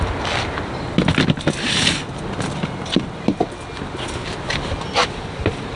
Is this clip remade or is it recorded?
recorded